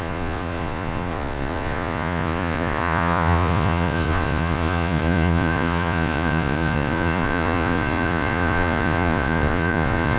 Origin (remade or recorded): remade